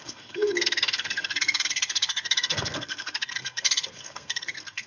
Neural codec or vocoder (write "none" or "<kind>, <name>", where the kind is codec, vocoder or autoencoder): codec, SNAC